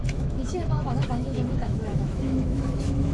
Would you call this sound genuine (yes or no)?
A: no